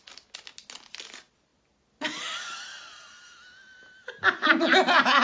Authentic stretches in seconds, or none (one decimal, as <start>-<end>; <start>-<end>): 0.0-5.2